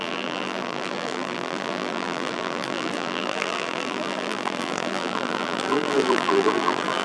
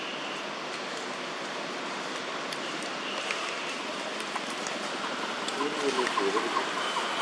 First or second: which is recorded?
second